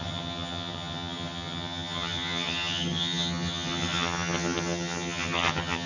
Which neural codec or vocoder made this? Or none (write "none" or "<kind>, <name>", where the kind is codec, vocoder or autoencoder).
vocoder, HiFi-GAN